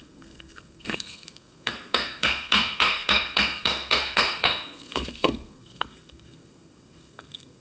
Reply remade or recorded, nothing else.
remade